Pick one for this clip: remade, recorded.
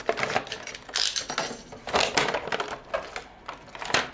recorded